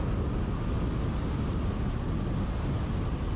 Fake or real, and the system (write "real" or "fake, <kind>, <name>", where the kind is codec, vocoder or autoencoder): real